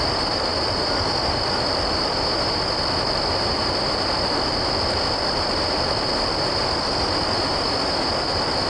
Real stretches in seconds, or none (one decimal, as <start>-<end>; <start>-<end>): 0.0-8.7